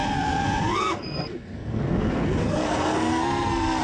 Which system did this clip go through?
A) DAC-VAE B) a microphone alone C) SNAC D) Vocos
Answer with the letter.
C